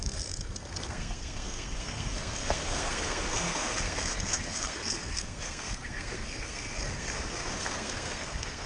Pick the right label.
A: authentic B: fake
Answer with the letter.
B